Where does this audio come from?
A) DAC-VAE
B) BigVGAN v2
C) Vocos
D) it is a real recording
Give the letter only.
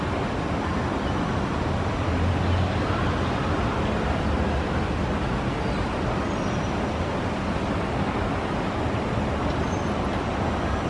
D